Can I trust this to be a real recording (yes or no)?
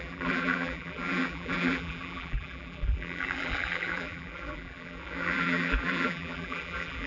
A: no